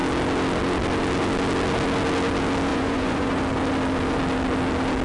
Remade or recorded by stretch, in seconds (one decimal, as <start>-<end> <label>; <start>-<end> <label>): 0.0-2.7 recorded; 2.7-3.4 remade; 3.4-5.0 recorded